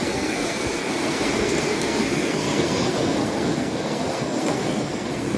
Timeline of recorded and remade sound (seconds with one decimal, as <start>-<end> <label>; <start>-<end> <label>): 0.0-5.4 remade